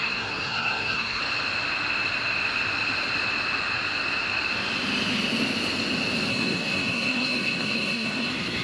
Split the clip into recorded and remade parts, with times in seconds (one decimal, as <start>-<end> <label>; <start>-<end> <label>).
0.0-1.2 remade; 1.2-6.3 recorded; 6.3-8.6 remade